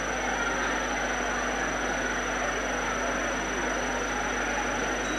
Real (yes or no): yes